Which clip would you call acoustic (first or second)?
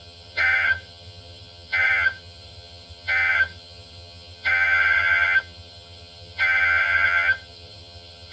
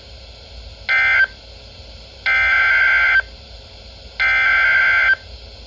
second